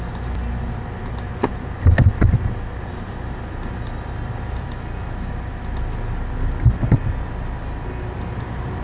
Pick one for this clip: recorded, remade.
recorded